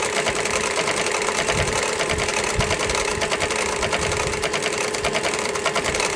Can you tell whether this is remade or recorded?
remade